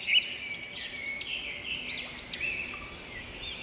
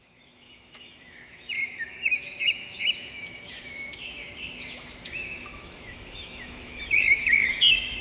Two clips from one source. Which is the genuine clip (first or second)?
first